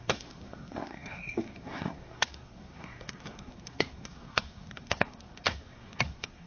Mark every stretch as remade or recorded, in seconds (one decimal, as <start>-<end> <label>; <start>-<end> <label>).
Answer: 0.0-6.5 remade